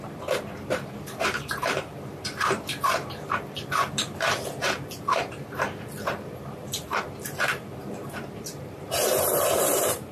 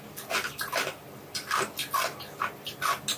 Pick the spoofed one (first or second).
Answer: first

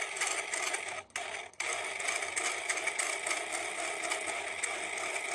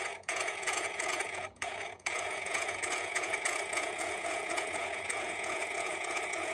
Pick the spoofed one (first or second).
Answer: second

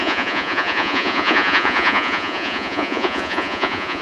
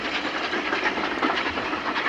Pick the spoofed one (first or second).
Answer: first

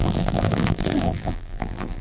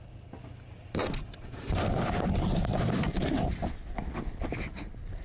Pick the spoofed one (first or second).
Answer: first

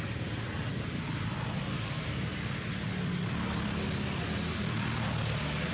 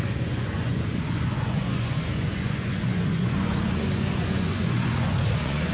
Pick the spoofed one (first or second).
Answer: second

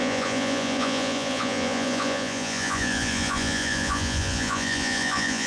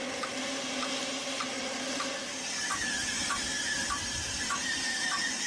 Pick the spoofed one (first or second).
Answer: first